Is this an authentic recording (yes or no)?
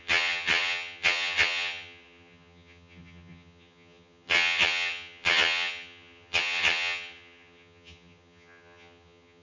no